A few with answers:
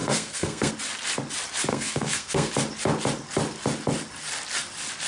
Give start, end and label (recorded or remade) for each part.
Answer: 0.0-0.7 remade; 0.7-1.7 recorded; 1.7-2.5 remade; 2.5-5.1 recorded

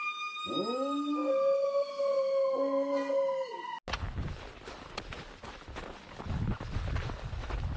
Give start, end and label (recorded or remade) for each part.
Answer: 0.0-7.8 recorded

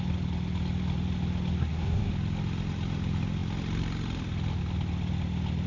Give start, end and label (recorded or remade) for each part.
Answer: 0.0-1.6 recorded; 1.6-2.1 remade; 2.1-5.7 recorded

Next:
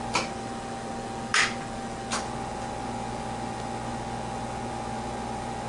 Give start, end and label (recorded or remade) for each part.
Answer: 0.0-5.7 recorded

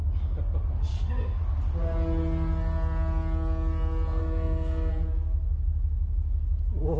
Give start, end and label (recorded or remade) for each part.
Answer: 0.0-0.9 recorded; 0.9-1.4 remade; 1.4-4.2 recorded; 4.2-4.9 remade; 4.9-7.0 recorded

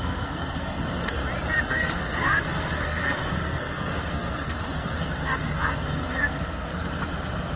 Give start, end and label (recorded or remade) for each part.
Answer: 0.0-1.2 remade; 1.2-1.7 recorded; 1.7-6.7 remade; 6.7-7.6 recorded

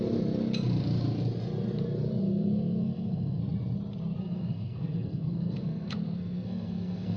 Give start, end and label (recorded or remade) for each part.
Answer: 0.0-2.2 recorded; 2.2-3.4 remade; 3.4-4.2 recorded; 4.2-7.2 remade

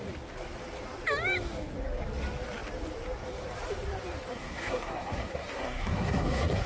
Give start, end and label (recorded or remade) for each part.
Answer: 0.0-4.3 recorded; 4.3-6.7 remade